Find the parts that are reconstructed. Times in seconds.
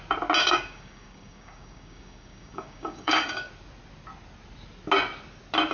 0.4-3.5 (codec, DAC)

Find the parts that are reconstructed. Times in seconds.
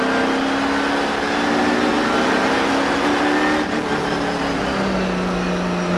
none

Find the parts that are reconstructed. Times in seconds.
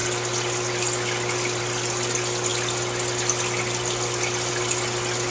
none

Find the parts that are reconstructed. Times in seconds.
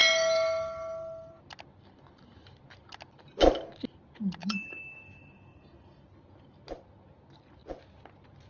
0.0-1.3 (codec, DAC); 4.4-6.0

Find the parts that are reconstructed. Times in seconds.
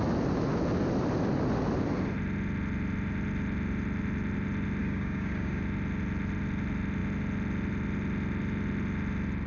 4.8-5.6 (codec, DAC)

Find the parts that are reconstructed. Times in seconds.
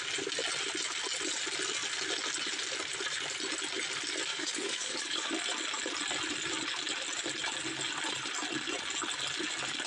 4.3-5.3 (codec, DAC)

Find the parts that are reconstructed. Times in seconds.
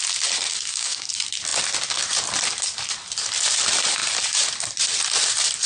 0.5-1.1 (codec, DAC)